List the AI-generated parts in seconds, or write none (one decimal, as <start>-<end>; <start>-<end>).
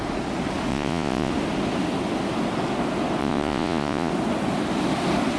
0.7-1.3; 3.2-4.1